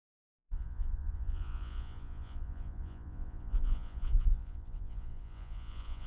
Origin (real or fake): fake